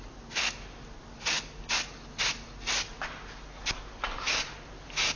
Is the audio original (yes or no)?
yes